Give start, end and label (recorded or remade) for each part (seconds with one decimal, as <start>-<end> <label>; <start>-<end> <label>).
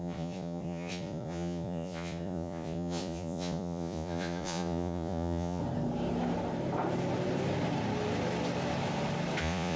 0.0-5.6 remade; 5.6-9.4 recorded; 9.4-9.8 remade